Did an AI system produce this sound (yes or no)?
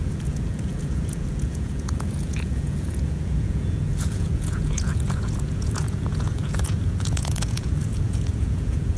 yes